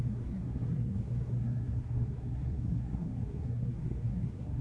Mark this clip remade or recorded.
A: remade